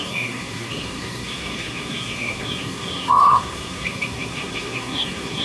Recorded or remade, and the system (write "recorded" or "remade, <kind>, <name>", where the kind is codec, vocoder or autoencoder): remade, codec, SNAC